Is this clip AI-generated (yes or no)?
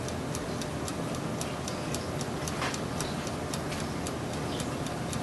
no